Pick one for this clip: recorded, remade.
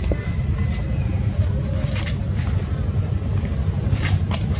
recorded